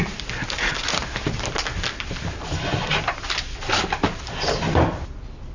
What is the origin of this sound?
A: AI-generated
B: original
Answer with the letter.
B